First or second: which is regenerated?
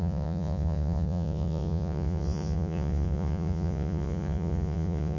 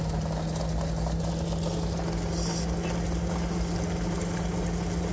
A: first